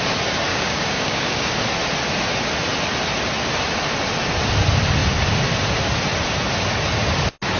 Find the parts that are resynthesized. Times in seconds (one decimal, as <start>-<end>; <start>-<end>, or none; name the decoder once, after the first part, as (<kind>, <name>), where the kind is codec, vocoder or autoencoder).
0.5-1.5 (codec, DAC)